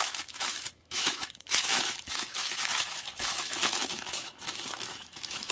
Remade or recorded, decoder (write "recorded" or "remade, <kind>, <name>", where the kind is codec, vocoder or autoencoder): remade, autoencoder, DAC-VAE